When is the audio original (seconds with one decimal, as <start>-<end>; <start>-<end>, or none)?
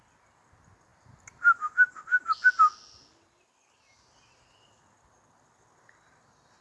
0.0-6.6